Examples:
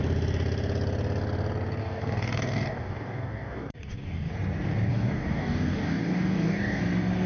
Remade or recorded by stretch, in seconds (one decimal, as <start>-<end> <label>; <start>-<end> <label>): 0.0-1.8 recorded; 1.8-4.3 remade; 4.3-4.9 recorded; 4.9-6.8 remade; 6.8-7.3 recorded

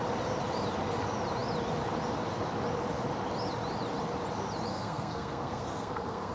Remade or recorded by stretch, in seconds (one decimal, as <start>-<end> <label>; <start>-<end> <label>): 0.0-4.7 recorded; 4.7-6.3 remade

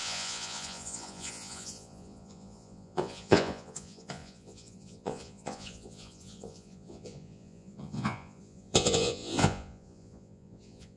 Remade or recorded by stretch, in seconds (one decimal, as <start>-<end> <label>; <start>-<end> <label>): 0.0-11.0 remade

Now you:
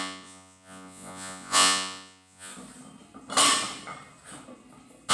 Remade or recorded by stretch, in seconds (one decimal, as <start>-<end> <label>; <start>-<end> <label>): 0.0-2.5 remade; 2.5-5.1 recorded

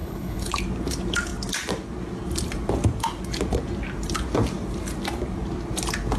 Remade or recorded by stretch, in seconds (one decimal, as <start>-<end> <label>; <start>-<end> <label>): 0.0-0.6 remade; 0.6-6.2 recorded

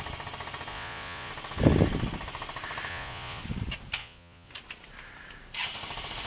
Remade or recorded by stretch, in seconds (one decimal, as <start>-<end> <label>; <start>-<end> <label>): 0.0-0.7 recorded; 0.7-1.3 remade; 1.3-2.9 recorded; 2.9-3.4 remade; 3.4-4.0 recorded; 4.0-4.5 remade; 4.5-6.3 recorded

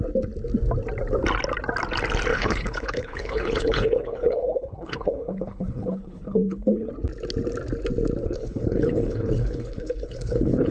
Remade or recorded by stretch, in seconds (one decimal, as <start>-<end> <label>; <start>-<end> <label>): 0.0-2.3 recorded; 2.3-6.9 remade; 6.9-8.2 recorded; 8.2-10.7 remade